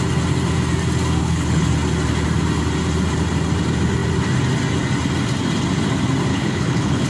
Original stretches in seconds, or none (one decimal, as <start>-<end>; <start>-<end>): 0.0-1.2; 1.7-6.3